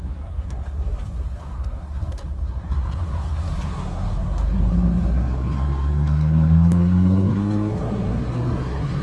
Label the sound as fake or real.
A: fake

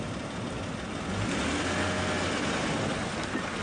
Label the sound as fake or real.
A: real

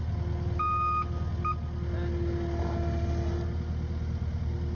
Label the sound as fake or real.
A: real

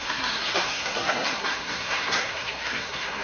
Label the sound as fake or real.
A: fake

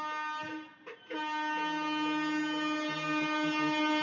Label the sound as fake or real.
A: real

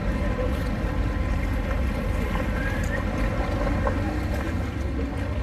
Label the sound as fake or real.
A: real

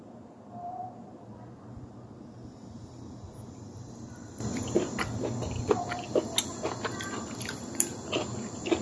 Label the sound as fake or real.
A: real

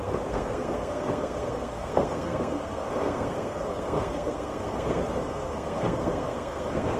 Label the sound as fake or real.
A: fake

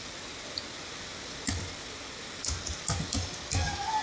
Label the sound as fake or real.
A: real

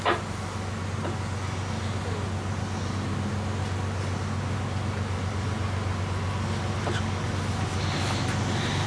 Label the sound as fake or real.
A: real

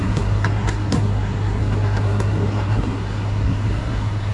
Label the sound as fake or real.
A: fake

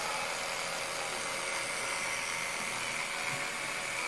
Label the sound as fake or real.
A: real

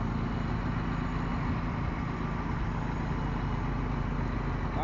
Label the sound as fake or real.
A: real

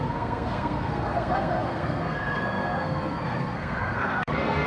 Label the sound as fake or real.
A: fake